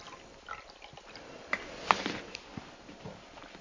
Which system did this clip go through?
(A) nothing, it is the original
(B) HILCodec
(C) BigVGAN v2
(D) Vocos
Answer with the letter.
A